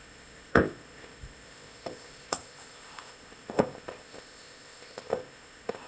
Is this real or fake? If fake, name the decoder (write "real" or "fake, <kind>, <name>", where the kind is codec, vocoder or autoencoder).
fake, codec, ZipCodec